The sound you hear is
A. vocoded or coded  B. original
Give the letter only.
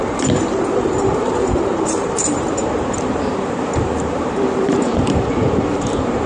A